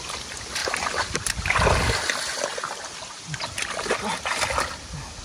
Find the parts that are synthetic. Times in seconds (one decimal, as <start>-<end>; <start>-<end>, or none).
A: 0.6-1.6